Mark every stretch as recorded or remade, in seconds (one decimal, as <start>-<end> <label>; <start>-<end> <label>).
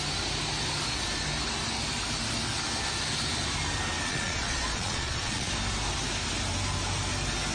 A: 0.0-4.1 recorded; 4.1-5.5 remade; 5.5-7.5 recorded